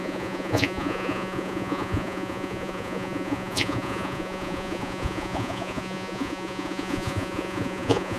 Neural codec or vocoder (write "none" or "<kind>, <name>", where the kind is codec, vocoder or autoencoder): vocoder, Vocos